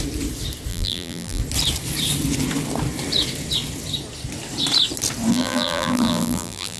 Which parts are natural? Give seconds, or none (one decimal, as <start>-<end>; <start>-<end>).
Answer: 0.0-0.7; 1.4-5.3